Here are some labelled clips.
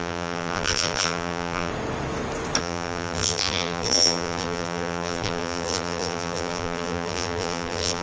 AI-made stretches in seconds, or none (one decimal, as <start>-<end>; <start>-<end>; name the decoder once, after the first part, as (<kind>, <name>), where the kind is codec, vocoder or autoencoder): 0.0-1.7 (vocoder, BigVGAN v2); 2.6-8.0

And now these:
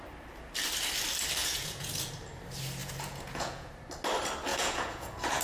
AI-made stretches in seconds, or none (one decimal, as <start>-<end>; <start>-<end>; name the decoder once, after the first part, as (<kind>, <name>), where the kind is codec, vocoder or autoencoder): 1.4-2.1 (vocoder, Vocos); 2.8-3.7; 4.5-5.4

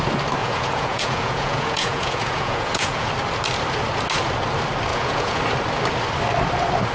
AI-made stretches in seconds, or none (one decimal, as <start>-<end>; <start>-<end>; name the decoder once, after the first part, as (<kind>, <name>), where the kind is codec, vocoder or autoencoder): 0.4-3.1 (vocoder, Vocos); 4.9-5.4

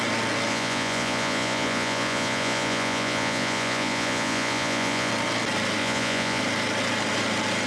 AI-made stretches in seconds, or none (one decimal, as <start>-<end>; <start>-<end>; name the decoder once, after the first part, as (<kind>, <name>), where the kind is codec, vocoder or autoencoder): 0.5-5.1 (vocoder, Vocos); 5.8-6.4